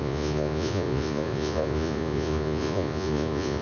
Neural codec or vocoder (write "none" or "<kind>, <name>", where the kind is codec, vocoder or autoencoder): vocoder, Vocos